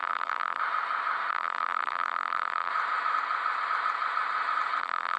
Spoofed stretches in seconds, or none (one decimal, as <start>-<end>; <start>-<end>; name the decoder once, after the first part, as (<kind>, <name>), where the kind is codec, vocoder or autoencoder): 0.0-0.6 (vocoder, BigVGAN v2); 1.3-2.7; 4.8-5.2

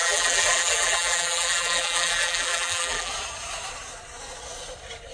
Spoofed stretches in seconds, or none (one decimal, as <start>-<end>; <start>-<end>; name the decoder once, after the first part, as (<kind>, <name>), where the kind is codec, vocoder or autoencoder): 0.0-3.1 (vocoder, BigVGAN v2)

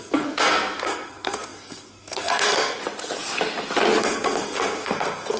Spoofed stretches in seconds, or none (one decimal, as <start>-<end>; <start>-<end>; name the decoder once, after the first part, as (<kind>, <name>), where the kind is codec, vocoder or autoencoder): 0.0-2.8 (codec, SNAC); 4.0-5.4

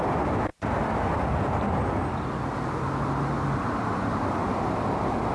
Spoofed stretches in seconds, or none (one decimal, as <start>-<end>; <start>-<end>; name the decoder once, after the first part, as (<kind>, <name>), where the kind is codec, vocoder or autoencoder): none

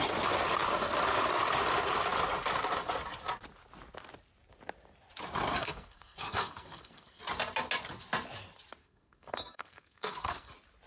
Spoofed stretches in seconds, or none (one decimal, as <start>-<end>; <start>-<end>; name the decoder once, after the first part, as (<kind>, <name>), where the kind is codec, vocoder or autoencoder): 5.6-7.2 (codec, SNAC); 8.8-10.5

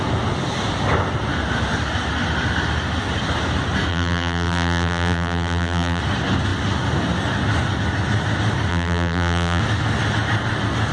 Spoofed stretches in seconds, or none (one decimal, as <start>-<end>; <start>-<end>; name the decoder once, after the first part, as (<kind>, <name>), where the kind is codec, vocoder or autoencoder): 3.9-6.0 (vocoder, BigVGAN v2); 8.7-9.6